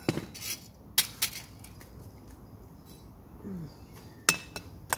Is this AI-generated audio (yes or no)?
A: no